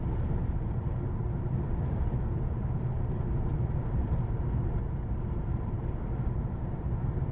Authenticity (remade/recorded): remade